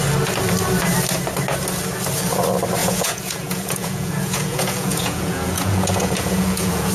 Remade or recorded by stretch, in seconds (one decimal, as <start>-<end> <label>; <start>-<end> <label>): 0.0-2.8 recorded; 2.8-6.9 remade